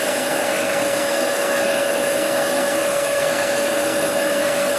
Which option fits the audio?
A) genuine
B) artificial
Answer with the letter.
B